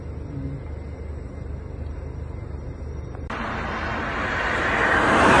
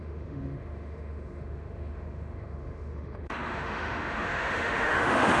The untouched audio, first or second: first